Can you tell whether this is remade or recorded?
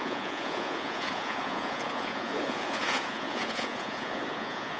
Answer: remade